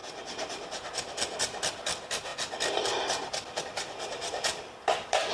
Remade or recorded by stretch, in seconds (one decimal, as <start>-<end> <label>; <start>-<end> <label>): 0.0-1.4 recorded; 1.4-2.3 remade; 2.3-3.6 recorded; 3.6-5.3 remade